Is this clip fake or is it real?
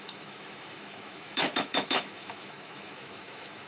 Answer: fake